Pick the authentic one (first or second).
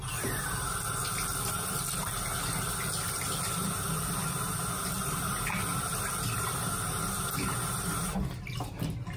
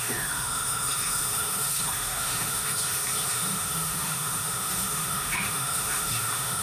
first